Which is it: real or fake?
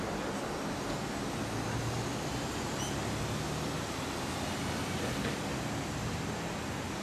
real